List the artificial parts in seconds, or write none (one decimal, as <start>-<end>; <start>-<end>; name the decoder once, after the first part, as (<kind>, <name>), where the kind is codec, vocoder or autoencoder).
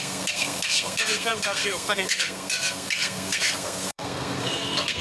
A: 0.0-5.0 (codec, SNAC)